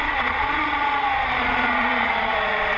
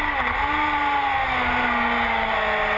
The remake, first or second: first